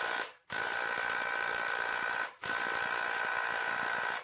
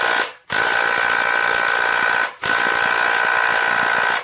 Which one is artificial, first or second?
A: first